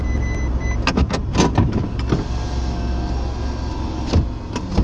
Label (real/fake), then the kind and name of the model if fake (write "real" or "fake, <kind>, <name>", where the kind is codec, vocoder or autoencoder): real